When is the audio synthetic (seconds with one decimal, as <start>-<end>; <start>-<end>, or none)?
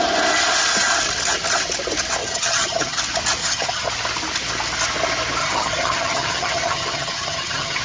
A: 2.2-3.0; 3.4-3.9; 5.4-7.8